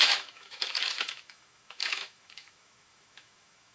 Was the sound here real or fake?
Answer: fake